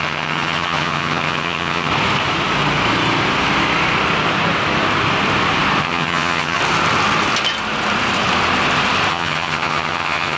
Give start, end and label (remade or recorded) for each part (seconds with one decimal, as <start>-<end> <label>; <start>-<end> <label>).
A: 0.0-1.9 remade; 1.9-5.8 recorded; 5.8-6.6 remade; 6.6-9.1 recorded; 9.1-10.4 remade